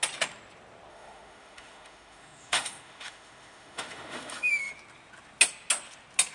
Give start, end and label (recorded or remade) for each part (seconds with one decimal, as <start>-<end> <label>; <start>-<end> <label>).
0.0-0.9 recorded; 0.9-4.7 remade; 4.7-6.3 recorded